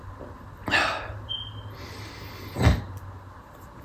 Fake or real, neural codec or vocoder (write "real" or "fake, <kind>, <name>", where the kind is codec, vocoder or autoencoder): real